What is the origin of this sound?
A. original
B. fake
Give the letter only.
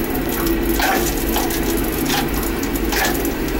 A